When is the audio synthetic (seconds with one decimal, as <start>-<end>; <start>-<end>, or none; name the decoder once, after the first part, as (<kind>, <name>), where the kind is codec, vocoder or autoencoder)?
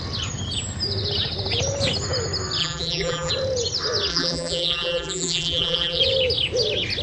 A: 2.6-3.3 (vocoder, BigVGAN v2); 4.1-6.0